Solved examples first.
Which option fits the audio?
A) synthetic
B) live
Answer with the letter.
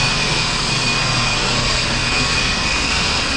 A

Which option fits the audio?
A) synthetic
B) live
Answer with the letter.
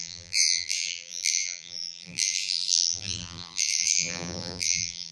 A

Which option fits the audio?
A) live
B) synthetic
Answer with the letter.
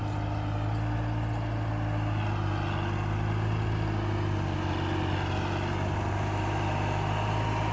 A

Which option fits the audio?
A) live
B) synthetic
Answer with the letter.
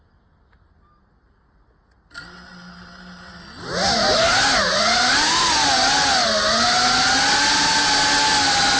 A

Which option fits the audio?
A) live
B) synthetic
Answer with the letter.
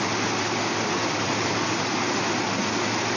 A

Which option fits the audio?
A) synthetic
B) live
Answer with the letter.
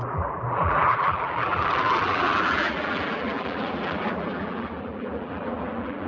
A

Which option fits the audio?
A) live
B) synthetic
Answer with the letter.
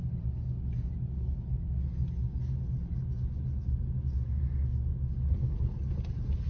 A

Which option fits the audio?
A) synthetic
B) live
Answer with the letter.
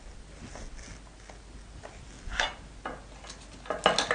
B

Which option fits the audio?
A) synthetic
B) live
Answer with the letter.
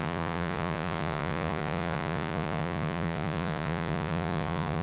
A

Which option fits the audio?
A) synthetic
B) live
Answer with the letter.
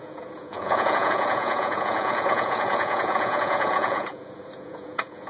A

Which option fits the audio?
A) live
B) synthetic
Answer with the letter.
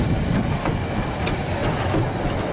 A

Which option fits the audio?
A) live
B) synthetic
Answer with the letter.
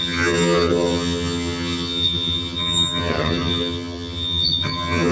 B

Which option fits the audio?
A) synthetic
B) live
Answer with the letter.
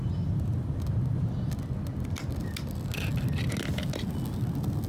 B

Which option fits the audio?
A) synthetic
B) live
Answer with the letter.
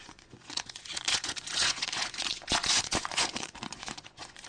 A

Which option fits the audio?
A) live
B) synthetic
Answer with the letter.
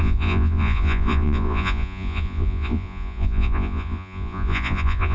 B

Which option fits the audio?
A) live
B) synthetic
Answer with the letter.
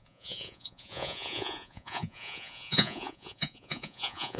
B